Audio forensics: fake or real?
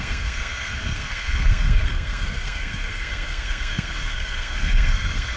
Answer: fake